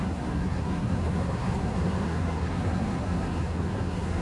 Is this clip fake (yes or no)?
yes